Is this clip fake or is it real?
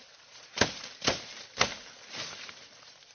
real